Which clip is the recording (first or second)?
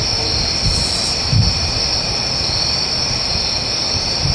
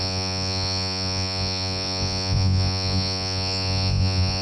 first